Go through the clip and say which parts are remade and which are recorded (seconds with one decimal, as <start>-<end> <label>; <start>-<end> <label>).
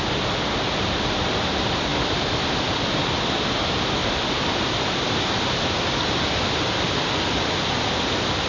0.0-4.0 recorded; 4.0-7.0 remade; 7.0-8.5 recorded